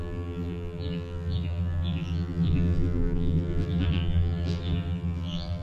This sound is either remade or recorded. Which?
remade